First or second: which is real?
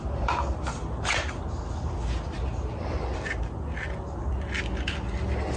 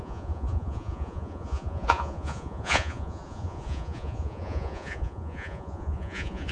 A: first